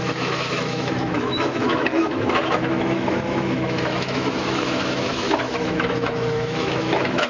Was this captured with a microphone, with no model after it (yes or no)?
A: no